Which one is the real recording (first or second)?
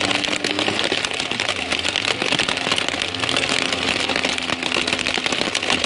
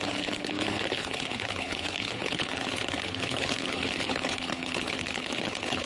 first